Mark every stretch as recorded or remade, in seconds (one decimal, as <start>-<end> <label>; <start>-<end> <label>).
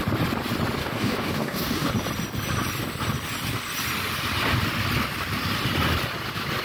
0.0-0.8 recorded; 0.8-1.9 remade; 1.9-6.6 recorded